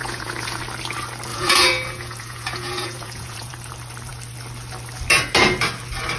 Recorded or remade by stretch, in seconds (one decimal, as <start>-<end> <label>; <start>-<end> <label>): 0.0-0.6 remade; 0.6-1.3 recorded; 1.3-3.5 remade; 3.5-6.2 recorded